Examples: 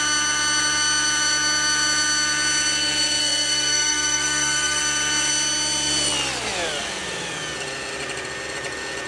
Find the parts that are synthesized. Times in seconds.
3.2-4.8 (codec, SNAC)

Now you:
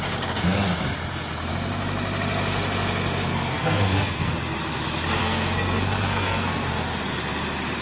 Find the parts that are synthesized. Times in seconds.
3.2-4.3 (codec, SNAC); 5.2-6.7

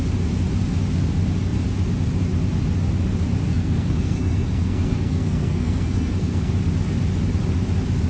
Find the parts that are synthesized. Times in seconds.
3.5-6.5 (codec, SNAC)

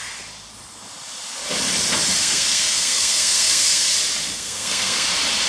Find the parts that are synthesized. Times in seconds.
2.2-3.9 (codec, SNAC); 4.3-5.1

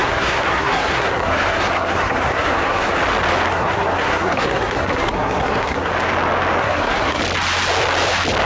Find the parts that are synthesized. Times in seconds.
0.0-3.0 (codec, SNAC); 3.5-5.9; 6.6-7.2

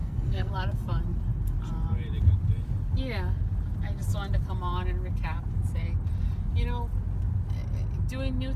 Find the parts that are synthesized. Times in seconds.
0.0-0.5 (codec, SNAC)